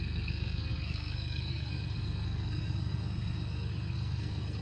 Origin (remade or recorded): remade